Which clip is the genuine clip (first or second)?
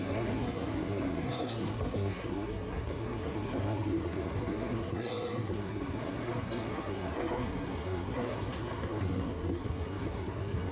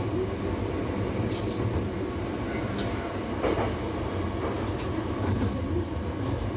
second